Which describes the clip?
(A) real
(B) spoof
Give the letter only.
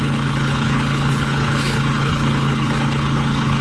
B